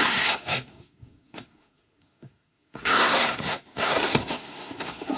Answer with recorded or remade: remade